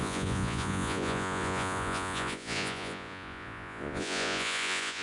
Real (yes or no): no